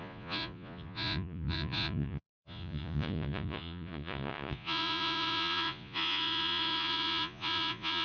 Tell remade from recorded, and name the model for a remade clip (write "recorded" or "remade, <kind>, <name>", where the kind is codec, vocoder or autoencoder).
remade, vocoder, Vocos